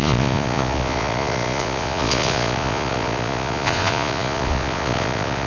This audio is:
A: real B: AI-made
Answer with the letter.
B